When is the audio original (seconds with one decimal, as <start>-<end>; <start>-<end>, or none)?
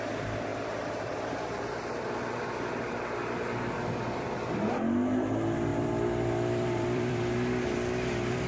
0.0-5.7